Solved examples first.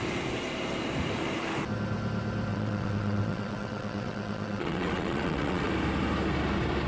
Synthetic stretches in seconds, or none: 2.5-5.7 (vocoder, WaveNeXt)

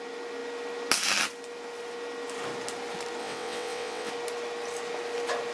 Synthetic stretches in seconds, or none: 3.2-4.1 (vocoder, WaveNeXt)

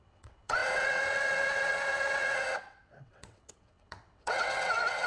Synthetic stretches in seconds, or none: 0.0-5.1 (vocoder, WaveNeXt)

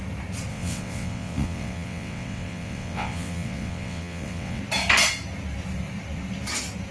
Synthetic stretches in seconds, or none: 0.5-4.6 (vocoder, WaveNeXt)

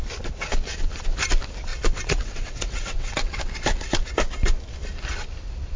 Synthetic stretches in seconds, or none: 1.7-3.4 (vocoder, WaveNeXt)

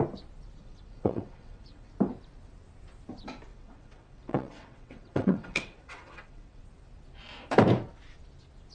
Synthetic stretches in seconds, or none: 0.6-1.9 (vocoder, WaveNeXt); 3.5-6.6